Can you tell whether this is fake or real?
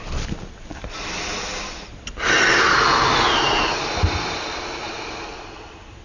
real